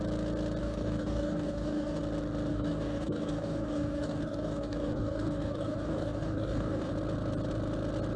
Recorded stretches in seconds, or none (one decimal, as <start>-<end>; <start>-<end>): 0.0-0.6; 2.0-2.5; 6.9-8.2